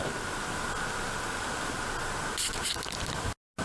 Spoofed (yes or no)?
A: no